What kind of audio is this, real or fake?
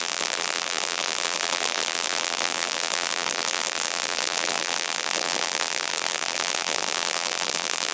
fake